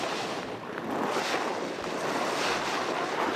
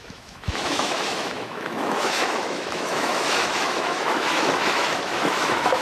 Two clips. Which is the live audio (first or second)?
first